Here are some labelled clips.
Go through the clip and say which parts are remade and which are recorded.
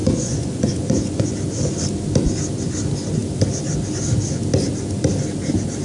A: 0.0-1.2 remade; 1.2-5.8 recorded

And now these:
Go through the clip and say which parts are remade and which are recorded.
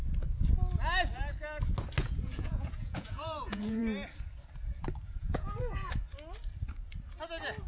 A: 0.0-2.0 recorded; 2.0-3.8 remade; 3.8-5.2 recorded; 5.2-5.9 remade; 5.9-7.7 recorded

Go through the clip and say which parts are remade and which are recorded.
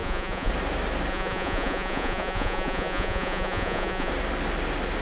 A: 0.0-0.5 remade; 0.5-1.1 recorded; 1.1-4.1 remade; 4.1-5.0 recorded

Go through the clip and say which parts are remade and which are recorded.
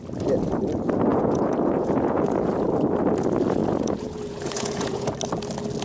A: 0.0-1.1 recorded; 1.1-2.5 remade; 2.5-3.6 recorded; 3.6-5.1 remade; 5.1-5.8 recorded